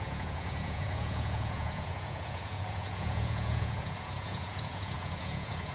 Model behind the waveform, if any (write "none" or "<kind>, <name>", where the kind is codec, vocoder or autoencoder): vocoder, Vocos